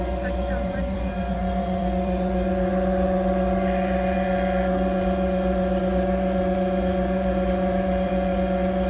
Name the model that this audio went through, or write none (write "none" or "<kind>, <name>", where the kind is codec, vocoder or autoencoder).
vocoder, Vocos